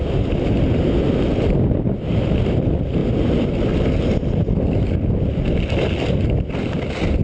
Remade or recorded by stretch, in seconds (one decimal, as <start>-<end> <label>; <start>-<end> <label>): 0.0-1.3 recorded; 1.3-2.3 remade; 2.3-3.0 recorded; 3.0-5.2 remade; 5.2-7.2 recorded